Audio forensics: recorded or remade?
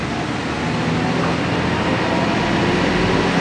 recorded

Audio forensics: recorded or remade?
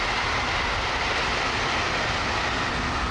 recorded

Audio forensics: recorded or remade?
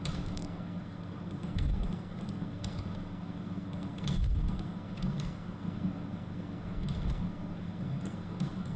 remade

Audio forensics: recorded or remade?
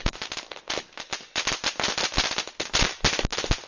recorded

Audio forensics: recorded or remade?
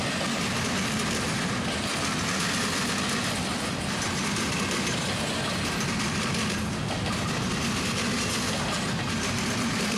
recorded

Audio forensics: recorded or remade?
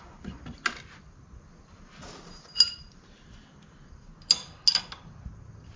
recorded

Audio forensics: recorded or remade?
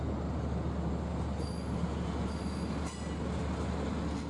recorded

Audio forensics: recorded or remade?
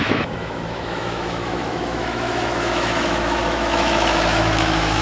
remade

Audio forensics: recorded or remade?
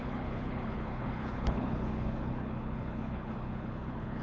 remade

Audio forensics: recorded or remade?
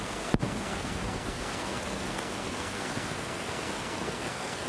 remade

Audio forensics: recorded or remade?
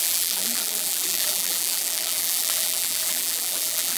remade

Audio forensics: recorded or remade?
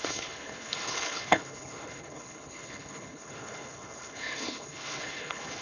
remade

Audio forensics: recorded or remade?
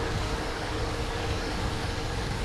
remade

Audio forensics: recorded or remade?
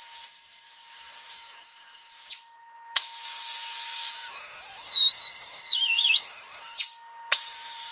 remade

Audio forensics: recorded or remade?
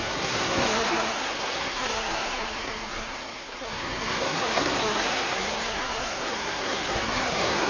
remade